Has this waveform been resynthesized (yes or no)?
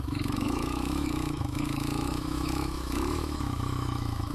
yes